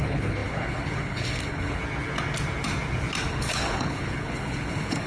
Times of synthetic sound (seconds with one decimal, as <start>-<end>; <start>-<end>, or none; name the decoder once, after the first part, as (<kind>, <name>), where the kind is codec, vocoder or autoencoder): 0.0-1.8 (codec, HILCodec); 3.3-5.1